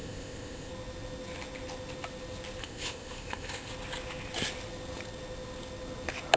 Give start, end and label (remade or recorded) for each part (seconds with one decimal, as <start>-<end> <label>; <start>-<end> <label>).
0.0-0.7 remade; 0.7-2.6 recorded; 2.6-3.7 remade; 3.7-6.4 recorded